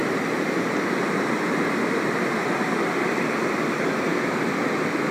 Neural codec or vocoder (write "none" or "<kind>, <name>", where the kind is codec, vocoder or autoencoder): none